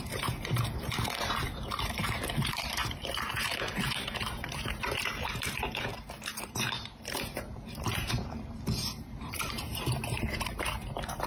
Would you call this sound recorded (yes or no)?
no